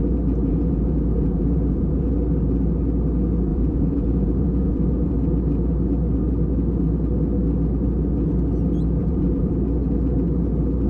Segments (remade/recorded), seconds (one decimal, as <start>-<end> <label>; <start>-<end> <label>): 0.0-0.4 recorded; 0.4-2.1 remade; 2.1-3.5 recorded; 3.5-5.1 remade; 5.1-9.0 recorded; 9.0-9.5 remade; 9.5-10.9 recorded